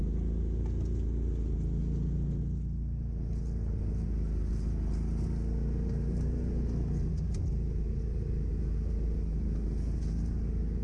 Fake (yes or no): no